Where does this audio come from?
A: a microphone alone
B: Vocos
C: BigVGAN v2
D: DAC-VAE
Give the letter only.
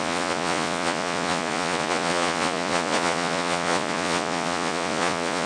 B